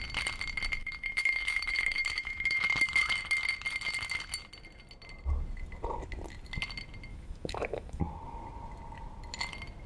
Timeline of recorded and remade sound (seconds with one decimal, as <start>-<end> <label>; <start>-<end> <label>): 0.0-0.8 recorded; 0.8-2.6 remade; 2.6-7.1 recorded; 7.1-8.0 remade; 8.0-9.9 recorded

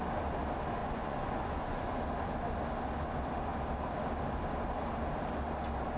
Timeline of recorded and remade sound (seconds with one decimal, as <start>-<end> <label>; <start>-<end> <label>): 0.0-0.8 recorded; 0.8-2.0 remade; 2.0-6.0 recorded

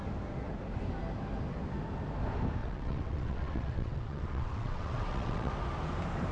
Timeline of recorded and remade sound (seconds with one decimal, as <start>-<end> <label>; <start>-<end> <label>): 0.0-2.6 recorded; 2.6-5.5 remade; 5.5-6.3 recorded

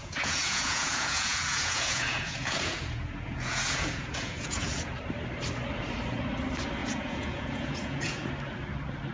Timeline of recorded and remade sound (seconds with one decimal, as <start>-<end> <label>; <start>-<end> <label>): 0.0-4.9 remade; 4.9-6.8 recorded; 6.8-8.3 remade; 8.3-9.1 recorded